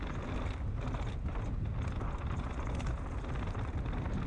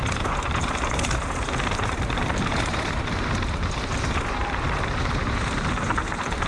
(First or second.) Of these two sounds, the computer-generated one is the second